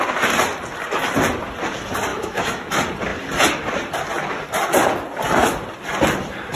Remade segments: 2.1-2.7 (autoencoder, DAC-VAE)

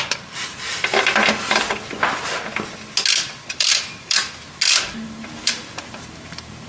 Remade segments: 0.0-0.7 (vocoder, BigVGAN v2); 3.5-4.2; 4.9-6.7

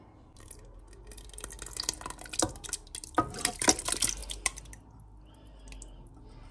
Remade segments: none

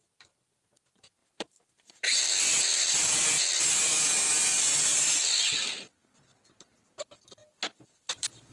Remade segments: 1.2-2.2 (vocoder, BigVGAN v2); 2.7-5.5

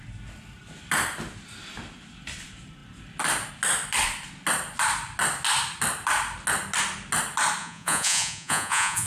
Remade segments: 7.6-9.1 (vocoder, Vocos)

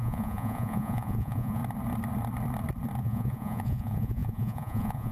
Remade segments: 0.0-1.6 (vocoder, Vocos); 3.0-5.1

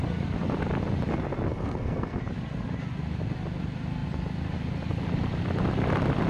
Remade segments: 1.5-2.2 (codec, SNAC)

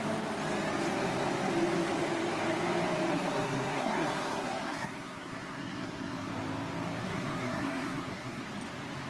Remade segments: 3.1-6.3 (codec, SNAC); 7.0-8.4